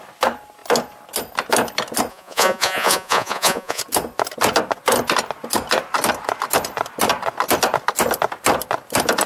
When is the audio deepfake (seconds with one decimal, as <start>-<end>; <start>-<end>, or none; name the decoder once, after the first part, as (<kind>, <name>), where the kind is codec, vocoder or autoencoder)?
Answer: 2.1-3.8 (vocoder, Vocos)